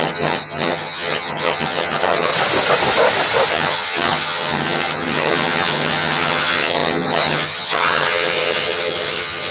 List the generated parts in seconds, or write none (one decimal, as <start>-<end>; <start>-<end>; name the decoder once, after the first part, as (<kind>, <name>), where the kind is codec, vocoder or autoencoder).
0.0-2.3 (vocoder, HiFi-GAN); 3.5-9.5